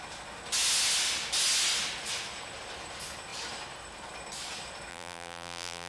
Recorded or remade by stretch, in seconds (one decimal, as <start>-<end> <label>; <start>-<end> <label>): 0.0-4.9 recorded; 4.9-5.9 remade